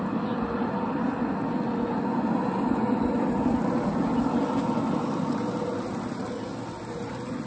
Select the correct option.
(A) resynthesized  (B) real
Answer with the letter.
B